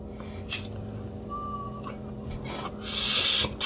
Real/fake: real